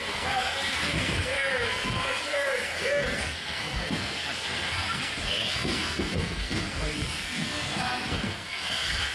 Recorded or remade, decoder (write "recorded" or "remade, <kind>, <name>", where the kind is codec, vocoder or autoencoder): remade, codec, SNAC